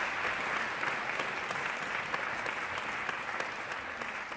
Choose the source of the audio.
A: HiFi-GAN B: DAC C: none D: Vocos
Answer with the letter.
C